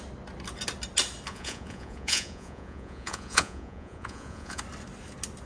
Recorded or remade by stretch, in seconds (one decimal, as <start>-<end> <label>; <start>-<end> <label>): 0.0-1.3 recorded; 1.3-4.6 remade; 4.6-5.5 recorded